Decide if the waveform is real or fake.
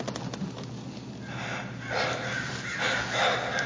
real